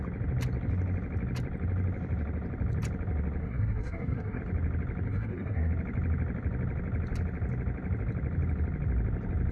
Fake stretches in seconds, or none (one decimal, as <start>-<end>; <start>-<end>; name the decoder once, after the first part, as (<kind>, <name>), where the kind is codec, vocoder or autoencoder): 3.4-4.4 (codec, SNAC); 5.1-5.7